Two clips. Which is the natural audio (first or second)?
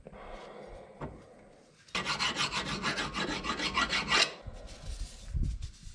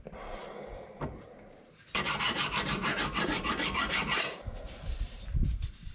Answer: first